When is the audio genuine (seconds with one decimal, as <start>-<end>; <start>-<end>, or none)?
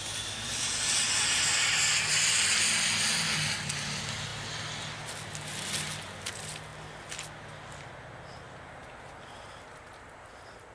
0.0-10.7